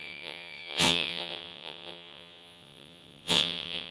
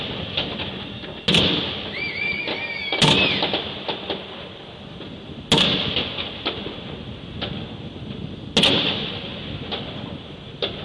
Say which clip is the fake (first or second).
first